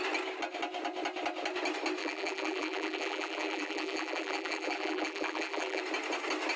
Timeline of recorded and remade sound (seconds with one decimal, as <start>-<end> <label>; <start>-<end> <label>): 0.0-2.0 recorded; 2.0-5.8 remade; 5.8-6.6 recorded